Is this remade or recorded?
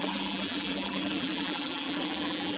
remade